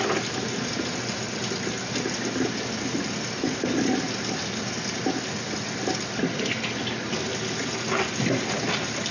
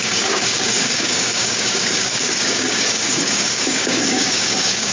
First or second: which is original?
first